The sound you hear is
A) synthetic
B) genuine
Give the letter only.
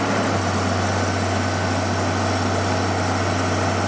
B